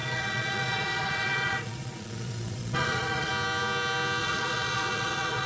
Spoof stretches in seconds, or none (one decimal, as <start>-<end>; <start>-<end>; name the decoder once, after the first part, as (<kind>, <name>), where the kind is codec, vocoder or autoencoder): 0.0-3.3 (vocoder, Vocos); 4.2-5.5